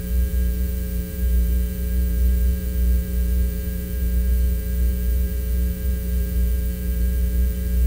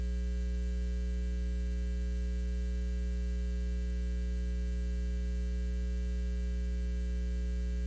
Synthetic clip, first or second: first